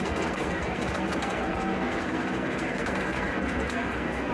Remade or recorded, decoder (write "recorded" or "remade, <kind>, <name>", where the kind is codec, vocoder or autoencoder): remade, codec, SNAC